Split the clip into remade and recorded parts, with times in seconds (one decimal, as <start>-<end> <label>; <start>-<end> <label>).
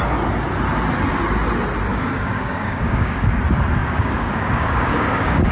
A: 0.0-1.9 recorded; 1.9-3.4 remade; 3.4-3.8 recorded; 3.8-5.5 remade